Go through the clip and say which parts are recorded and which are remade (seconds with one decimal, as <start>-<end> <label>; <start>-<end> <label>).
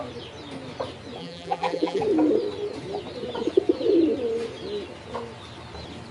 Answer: 0.0-1.2 recorded; 1.2-2.0 remade; 2.0-6.1 recorded